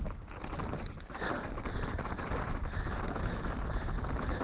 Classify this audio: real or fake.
real